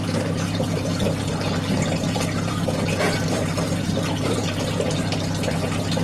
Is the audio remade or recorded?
remade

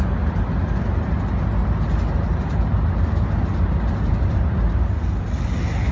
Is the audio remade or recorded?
recorded